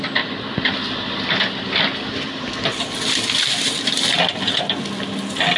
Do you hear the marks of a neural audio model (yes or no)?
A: no